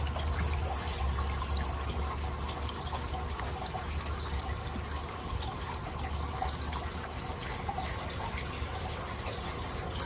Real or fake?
real